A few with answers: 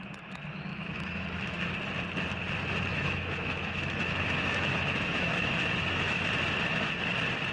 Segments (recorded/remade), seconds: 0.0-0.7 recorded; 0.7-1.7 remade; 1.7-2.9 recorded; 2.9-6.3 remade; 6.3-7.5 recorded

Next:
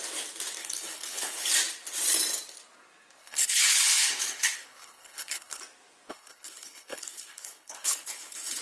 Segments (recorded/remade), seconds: 0.0-0.6 recorded; 0.6-1.5 remade; 1.5-3.2 recorded; 3.2-5.6 remade; 5.6-6.1 recorded; 6.1-8.6 remade

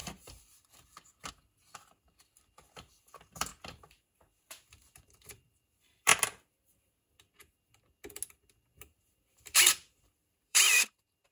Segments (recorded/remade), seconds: 0.0-3.5 remade; 3.5-4.8 recorded; 4.8-6.1 remade; 6.1-9.3 recorded; 9.3-11.3 remade

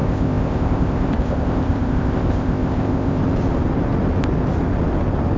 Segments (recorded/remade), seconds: 0.0-3.2 remade; 3.2-5.4 recorded

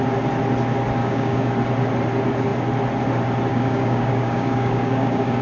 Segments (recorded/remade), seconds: 0.0-1.0 recorded; 1.0-1.5 remade; 1.5-3.5 recorded; 3.5-5.4 remade